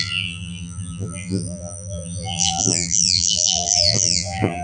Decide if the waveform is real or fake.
fake